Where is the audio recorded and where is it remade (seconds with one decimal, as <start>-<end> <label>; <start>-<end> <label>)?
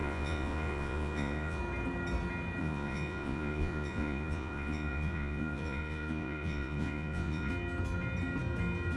0.0-1.6 remade; 1.6-2.6 recorded; 2.6-7.5 remade; 7.5-9.0 recorded